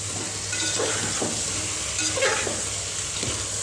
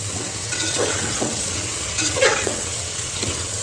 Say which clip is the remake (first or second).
second